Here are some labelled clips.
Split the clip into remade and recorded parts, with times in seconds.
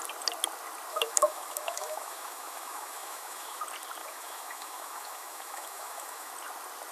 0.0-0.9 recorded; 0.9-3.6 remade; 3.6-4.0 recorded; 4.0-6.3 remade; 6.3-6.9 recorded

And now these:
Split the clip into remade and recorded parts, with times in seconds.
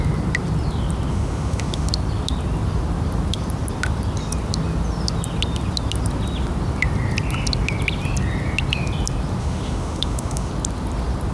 0.0-1.1 recorded; 1.1-1.9 remade; 1.9-9.4 recorded; 9.4-10.5 remade; 10.5-11.3 recorded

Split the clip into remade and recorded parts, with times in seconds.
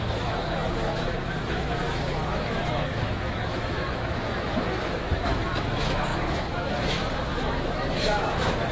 0.0-8.7 remade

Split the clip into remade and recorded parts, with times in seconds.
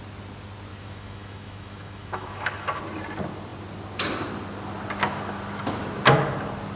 0.0-0.7 recorded; 0.7-2.8 remade; 2.8-6.8 recorded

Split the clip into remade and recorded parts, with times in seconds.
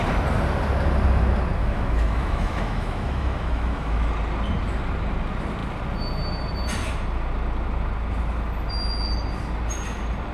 0.0-1.6 recorded; 1.6-4.1 remade; 4.1-10.3 recorded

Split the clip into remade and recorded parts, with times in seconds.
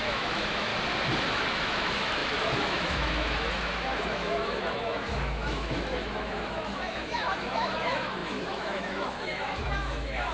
0.0-0.7 remade; 0.7-1.3 recorded; 1.3-10.3 remade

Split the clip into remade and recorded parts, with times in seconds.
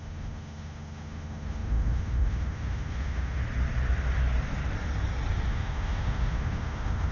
0.0-3.4 remade; 3.4-5.5 recorded; 5.5-7.1 remade